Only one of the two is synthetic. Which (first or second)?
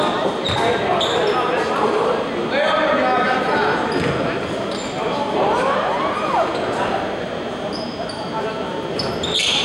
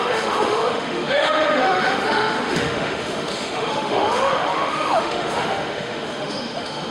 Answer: second